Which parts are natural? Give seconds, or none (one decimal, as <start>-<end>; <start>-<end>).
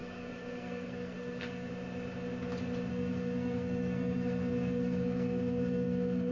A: 1.7-2.9